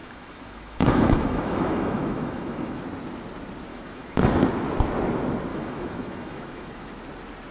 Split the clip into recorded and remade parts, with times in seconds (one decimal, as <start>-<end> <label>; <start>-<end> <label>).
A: 0.0-2.8 remade; 2.8-3.7 recorded; 3.7-4.3 remade; 4.3-5.5 recorded; 5.5-6.9 remade; 6.9-7.5 recorded